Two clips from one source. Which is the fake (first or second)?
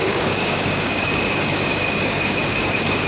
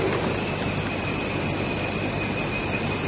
first